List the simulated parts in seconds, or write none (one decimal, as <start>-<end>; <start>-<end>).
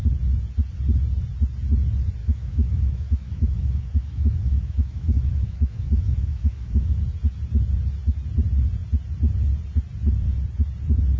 2.2-7.0